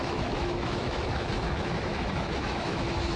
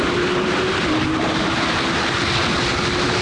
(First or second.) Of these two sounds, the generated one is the first